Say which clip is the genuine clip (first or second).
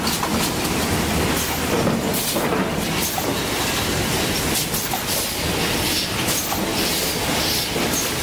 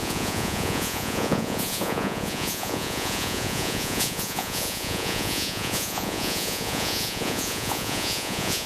first